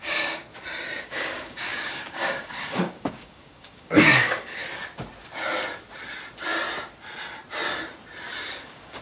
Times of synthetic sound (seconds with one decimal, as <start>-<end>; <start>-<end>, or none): 0.0-0.5; 1.0-4.6; 8.6-9.0